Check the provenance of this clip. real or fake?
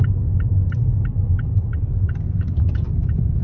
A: real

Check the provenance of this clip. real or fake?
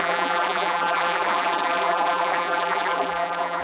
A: fake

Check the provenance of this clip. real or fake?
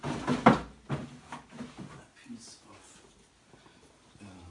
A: real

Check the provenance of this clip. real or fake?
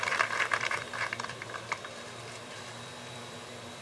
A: fake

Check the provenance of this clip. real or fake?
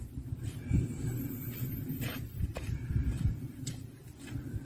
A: fake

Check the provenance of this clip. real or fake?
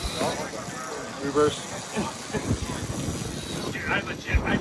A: real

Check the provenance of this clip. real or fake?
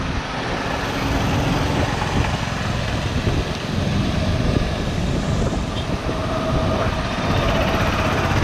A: real